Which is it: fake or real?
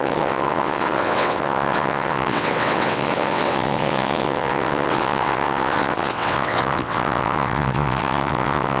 fake